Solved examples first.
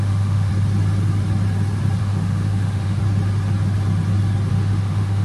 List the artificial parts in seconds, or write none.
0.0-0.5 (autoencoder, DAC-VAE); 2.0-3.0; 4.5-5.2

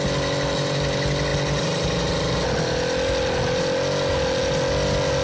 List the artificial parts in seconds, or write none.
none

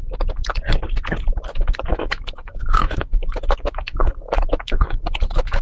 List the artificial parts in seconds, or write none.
1.9-5.6 (autoencoder, DAC-VAE)

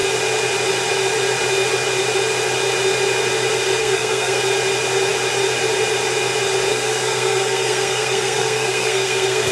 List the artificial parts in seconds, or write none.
3.8-4.4 (codec, SNAC); 6.7-9.5